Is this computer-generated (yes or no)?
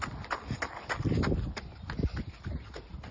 no